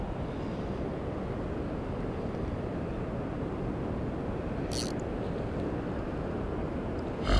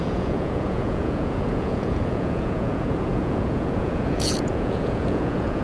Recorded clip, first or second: first